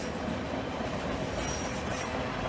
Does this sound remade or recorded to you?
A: recorded